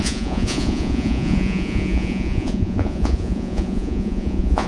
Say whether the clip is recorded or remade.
remade